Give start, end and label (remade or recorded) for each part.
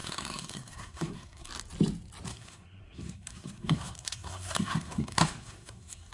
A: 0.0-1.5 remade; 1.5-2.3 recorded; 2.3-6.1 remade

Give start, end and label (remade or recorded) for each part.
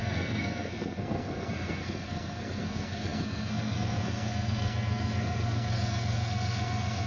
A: 0.0-7.1 remade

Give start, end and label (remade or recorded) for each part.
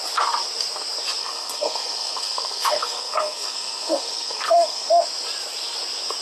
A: 0.0-1.2 recorded; 1.2-4.9 remade; 4.9-6.2 recorded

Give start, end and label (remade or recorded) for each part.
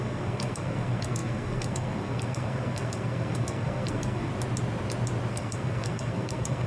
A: 0.0-4.3 remade; 4.3-5.3 recorded; 5.3-6.7 remade